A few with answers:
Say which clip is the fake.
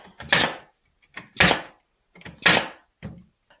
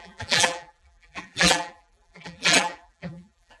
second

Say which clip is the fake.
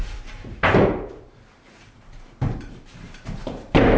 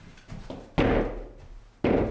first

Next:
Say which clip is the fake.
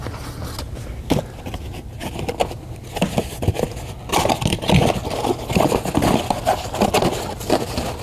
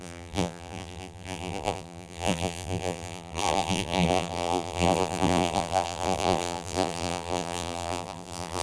second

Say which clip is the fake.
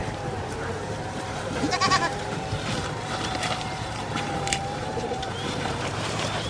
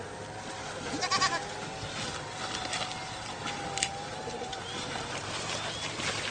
first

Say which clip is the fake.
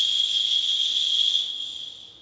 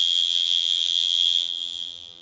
second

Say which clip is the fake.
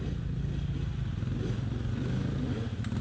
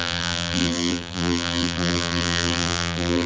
second